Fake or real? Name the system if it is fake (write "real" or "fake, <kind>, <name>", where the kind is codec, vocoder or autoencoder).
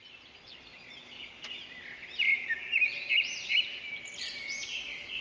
real